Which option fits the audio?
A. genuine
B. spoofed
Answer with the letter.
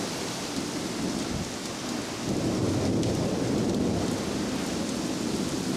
A